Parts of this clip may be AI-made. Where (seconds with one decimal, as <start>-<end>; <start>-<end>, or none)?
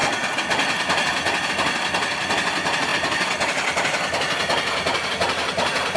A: none